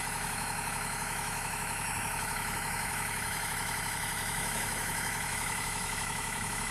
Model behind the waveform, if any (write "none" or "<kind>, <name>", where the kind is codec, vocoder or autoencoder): autoencoder, DAC-VAE